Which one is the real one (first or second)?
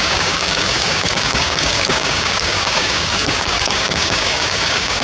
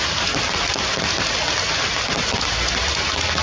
second